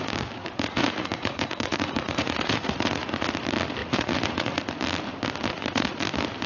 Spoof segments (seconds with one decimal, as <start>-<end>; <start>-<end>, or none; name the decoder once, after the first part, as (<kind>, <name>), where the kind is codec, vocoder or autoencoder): 0.4-3.3 (vocoder, Vocos); 3.8-4.6; 5.5-6.0